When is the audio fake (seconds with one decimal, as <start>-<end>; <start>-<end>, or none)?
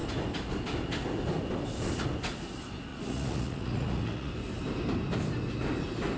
2.9-4.3